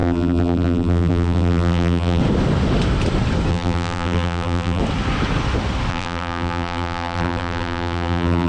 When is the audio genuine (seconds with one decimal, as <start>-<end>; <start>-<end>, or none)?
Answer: 2.2-3.5; 4.8-5.9

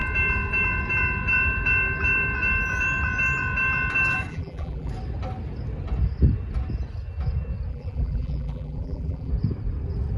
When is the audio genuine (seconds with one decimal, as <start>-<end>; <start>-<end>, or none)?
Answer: 0.0-4.3; 4.9-7.7; 9.3-10.2

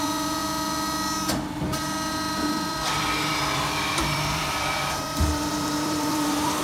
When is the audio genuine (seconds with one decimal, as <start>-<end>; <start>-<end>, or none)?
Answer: 0.4-2.1

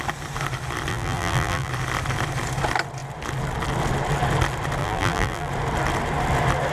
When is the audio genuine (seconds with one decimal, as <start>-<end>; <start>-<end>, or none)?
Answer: 0.0-0.9; 1.7-4.8; 5.5-6.7

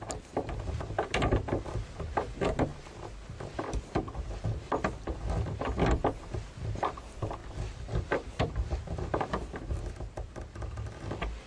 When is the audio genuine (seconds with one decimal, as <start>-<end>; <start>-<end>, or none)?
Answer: 0.0-7.4; 8.5-11.5

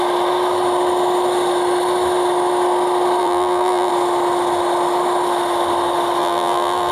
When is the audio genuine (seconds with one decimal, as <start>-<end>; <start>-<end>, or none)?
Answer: 0.0-3.2; 3.9-6.2

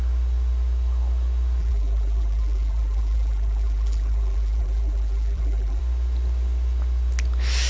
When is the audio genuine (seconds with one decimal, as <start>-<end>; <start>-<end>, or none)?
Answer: 0.0-1.6; 5.8-7.7